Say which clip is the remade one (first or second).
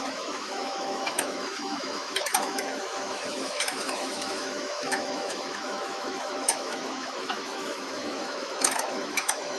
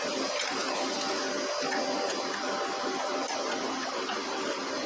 first